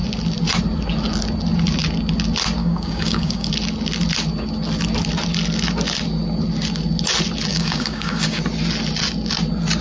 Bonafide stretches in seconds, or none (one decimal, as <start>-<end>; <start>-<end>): 0.0-2.6; 3.5-7.5; 8.4-9.8